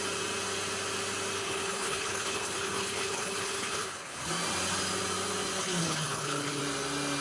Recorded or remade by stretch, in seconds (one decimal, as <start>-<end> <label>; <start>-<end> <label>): 0.0-1.4 recorded; 1.4-4.3 remade; 4.3-5.6 recorded; 5.6-6.6 remade; 6.6-7.2 recorded